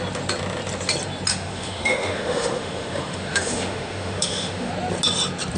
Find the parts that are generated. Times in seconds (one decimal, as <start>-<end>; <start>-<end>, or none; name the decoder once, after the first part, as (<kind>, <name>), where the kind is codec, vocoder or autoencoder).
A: 1.3-4.7 (autoencoder, DAC-VAE)